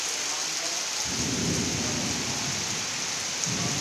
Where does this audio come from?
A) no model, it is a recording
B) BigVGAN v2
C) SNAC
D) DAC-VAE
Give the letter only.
A